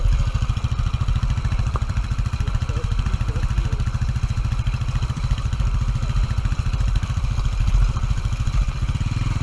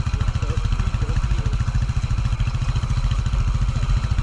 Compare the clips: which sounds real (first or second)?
second